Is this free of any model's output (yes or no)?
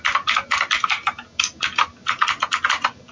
yes